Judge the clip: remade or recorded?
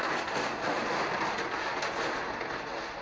recorded